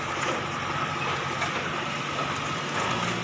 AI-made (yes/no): no